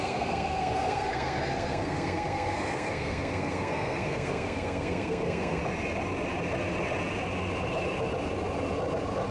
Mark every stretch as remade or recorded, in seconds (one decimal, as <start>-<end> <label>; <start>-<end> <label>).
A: 0.0-5.6 remade; 5.6-9.3 recorded